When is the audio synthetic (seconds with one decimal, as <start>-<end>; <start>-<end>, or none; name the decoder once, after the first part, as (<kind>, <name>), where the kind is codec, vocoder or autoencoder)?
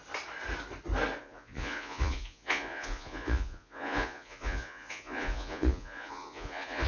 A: 1.2-6.9 (vocoder, Vocos)